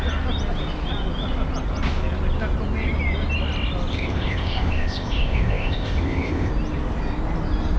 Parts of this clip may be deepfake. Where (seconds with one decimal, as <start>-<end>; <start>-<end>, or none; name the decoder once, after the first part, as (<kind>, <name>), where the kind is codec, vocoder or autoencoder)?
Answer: 3.9-6.5 (codec, ZipCodec)